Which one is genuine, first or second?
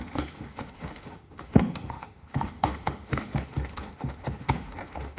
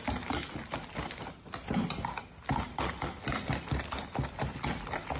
second